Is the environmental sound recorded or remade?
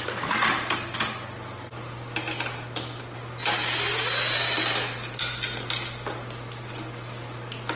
recorded